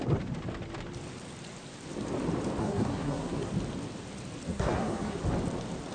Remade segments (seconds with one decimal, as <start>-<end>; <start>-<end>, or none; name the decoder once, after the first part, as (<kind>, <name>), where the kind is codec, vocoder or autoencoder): 2.6-3.5 (codec, SNAC); 4.5-5.2